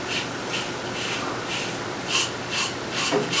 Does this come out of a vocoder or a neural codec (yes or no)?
no